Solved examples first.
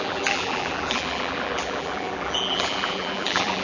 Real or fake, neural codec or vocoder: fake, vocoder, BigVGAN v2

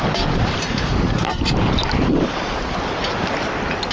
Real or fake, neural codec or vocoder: real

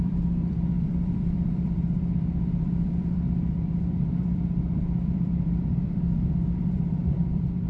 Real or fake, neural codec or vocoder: fake, vocoder, BigVGAN v2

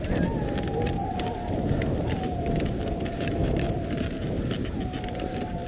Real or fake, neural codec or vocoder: fake, vocoder, BigVGAN v2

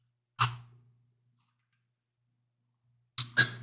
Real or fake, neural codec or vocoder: real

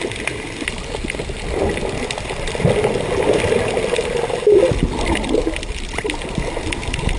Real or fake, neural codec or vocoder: real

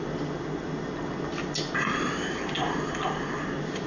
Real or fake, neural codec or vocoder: real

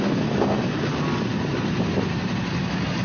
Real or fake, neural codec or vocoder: real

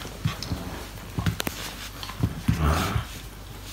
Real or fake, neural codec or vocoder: real